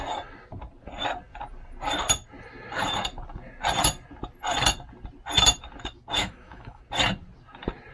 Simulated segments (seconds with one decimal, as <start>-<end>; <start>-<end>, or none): 6.2-6.8